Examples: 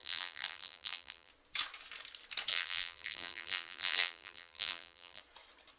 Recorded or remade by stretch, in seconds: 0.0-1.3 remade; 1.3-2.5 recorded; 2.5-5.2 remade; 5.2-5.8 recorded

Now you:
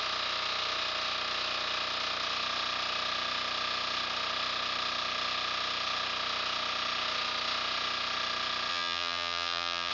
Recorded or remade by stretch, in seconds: 0.0-8.7 recorded; 8.7-9.9 remade

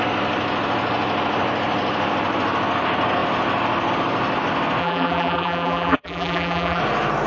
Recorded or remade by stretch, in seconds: 0.0-4.8 recorded; 4.8-6.8 remade; 6.8-7.3 recorded